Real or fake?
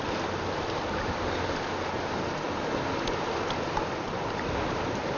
real